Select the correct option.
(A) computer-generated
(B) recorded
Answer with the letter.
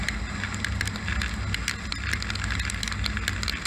B